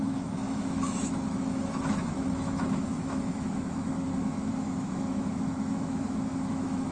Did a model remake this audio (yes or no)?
yes